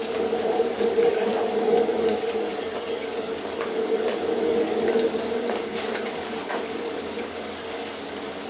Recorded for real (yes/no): no